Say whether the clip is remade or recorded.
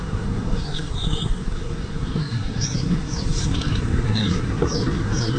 remade